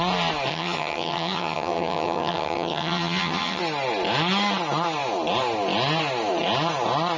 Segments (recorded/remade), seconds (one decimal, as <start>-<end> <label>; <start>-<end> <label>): 0.0-0.5 recorded; 0.5-3.6 remade; 3.6-7.2 recorded